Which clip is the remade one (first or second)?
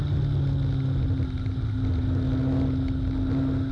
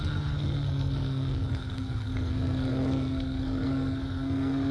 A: second